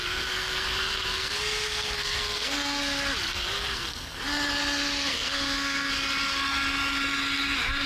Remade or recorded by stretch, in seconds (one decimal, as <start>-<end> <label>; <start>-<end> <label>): 0.0-2.8 remade; 2.8-3.3 recorded; 3.3-4.2 remade; 4.2-5.1 recorded; 5.1-5.9 remade; 5.9-7.9 recorded